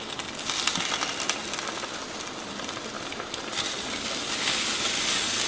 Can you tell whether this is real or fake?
real